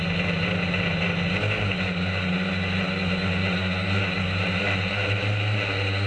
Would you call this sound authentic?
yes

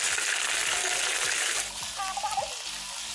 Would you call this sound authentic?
yes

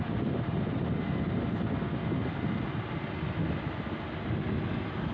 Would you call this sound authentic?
yes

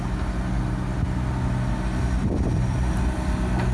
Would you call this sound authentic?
yes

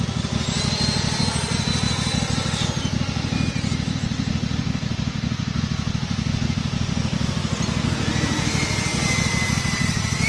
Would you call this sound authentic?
yes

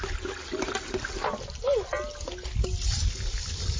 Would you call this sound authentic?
yes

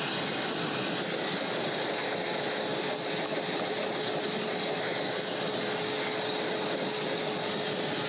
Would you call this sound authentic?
yes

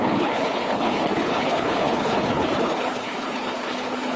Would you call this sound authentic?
no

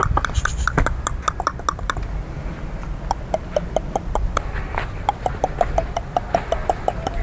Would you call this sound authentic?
yes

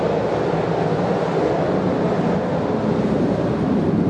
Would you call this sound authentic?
yes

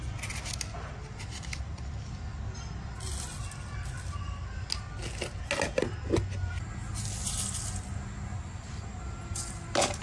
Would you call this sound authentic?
yes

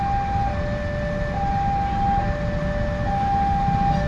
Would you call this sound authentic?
yes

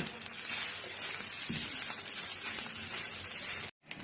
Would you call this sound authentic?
yes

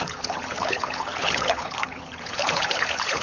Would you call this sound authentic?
no